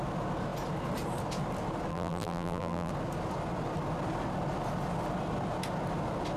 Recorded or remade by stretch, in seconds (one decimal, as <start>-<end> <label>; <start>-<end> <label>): 0.0-1.9 recorded; 1.9-2.9 remade; 2.9-6.4 recorded